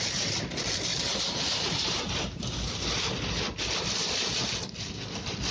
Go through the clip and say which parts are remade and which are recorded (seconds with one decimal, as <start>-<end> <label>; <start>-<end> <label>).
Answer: 0.0-0.9 recorded; 0.9-2.0 remade; 2.0-5.5 recorded